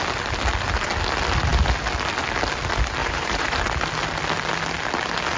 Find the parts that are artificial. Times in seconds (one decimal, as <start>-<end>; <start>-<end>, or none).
3.0-3.7